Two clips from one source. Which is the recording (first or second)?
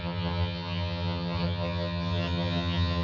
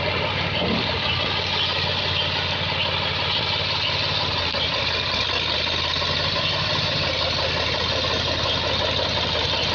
second